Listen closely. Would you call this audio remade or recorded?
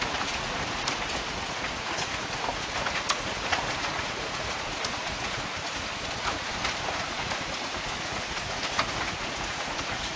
remade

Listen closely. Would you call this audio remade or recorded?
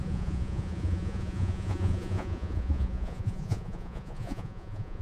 remade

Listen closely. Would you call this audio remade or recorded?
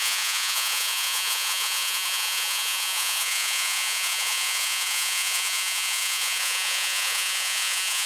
remade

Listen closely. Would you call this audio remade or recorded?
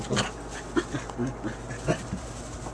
recorded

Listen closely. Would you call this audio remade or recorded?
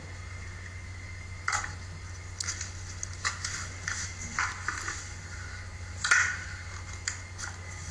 recorded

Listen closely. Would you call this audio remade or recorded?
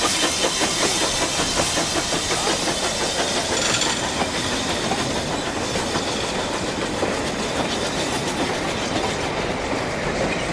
recorded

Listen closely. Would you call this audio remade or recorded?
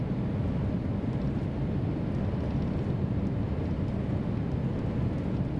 recorded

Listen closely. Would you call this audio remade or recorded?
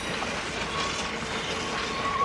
recorded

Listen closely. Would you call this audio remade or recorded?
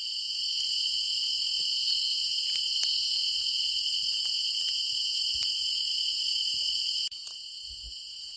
remade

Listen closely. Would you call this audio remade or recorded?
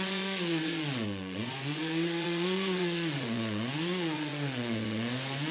remade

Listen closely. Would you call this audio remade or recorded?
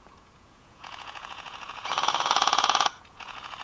remade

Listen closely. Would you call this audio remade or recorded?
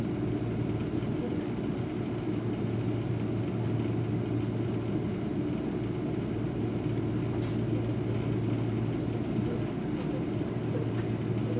recorded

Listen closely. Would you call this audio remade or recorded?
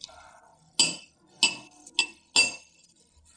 recorded